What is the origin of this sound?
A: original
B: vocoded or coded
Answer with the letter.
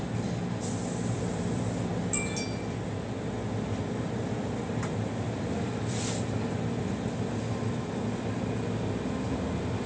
A